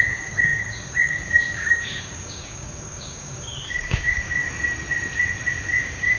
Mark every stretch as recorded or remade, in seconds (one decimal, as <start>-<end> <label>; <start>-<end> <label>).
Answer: 0.0-4.4 remade; 4.4-5.8 recorded; 5.8-6.2 remade